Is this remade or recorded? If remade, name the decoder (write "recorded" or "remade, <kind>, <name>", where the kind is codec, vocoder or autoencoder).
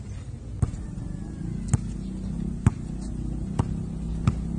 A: recorded